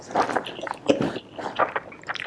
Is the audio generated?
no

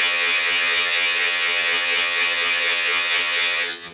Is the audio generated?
yes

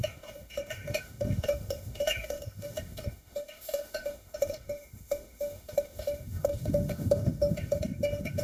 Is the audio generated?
yes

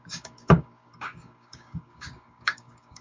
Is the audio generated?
yes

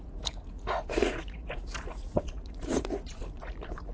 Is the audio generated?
yes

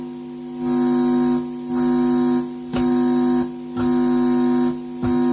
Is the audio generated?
no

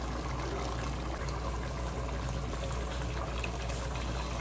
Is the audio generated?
no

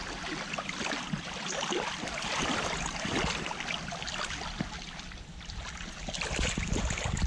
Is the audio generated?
no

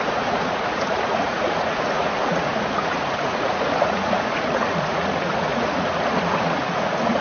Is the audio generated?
yes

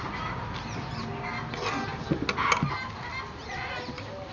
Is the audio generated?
no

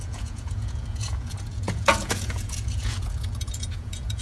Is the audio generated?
yes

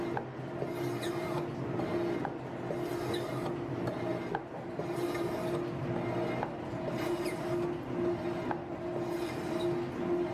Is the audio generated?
no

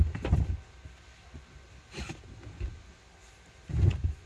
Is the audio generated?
no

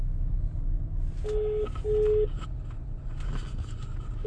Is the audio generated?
no